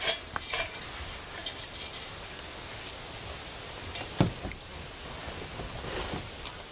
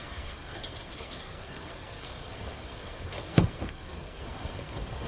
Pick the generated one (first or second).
second